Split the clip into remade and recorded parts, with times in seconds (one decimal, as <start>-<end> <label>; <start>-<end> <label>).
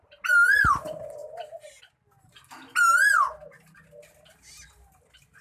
0.0-5.4 recorded